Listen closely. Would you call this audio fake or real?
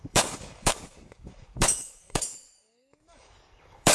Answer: fake